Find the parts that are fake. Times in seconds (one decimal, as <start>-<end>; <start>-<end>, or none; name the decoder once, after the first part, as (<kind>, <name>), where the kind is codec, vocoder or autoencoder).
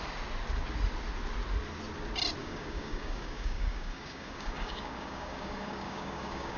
2.4-6.6 (codec, DAC)